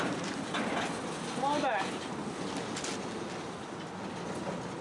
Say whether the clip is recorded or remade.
recorded